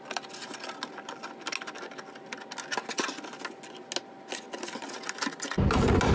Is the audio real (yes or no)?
yes